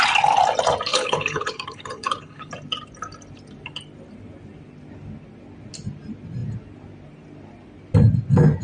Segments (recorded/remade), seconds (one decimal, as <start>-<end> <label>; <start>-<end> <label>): 0.0-0.9 recorded; 0.9-2.5 remade; 2.5-8.6 recorded